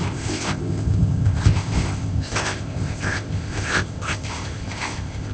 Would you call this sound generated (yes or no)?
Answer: yes